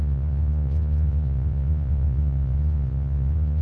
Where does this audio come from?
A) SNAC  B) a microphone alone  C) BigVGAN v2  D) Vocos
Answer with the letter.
D